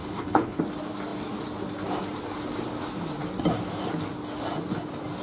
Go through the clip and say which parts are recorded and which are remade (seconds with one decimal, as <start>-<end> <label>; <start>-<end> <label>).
0.0-0.6 remade; 0.6-5.2 recorded